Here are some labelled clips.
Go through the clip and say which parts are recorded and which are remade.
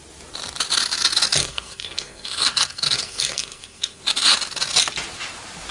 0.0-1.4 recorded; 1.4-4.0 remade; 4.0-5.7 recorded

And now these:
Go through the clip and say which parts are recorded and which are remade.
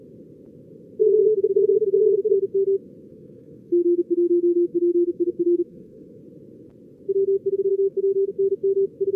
0.0-3.1 recorded; 3.1-6.2 remade; 6.2-7.7 recorded; 7.7-8.3 remade; 8.3-9.2 recorded